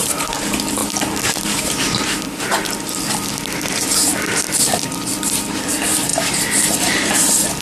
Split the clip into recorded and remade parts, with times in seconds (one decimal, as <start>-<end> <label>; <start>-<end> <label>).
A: 0.0-7.6 recorded